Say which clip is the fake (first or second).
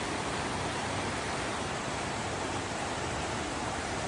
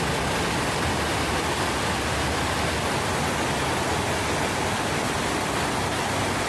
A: first